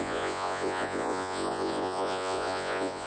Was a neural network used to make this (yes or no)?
yes